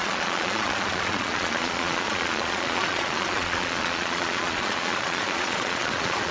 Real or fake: fake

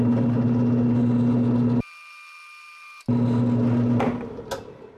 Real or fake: real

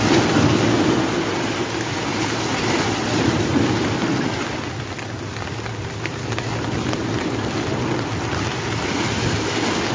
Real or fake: real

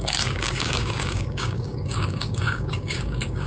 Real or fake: fake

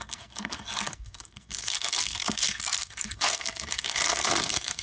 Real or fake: fake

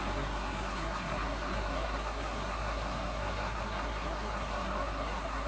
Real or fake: fake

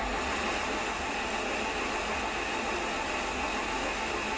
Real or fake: real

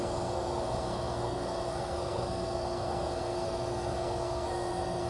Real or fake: fake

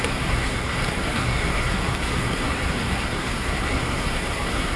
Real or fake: fake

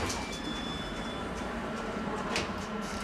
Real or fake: fake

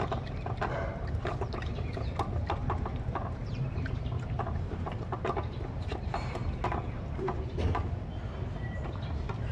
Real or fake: fake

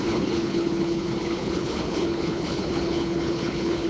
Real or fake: fake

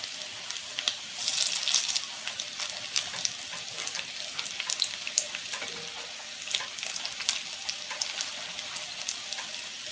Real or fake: real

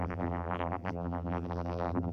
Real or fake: fake